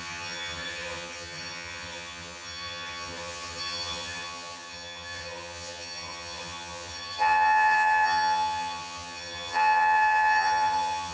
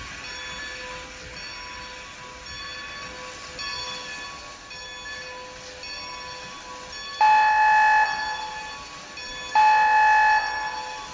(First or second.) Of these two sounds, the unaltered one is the second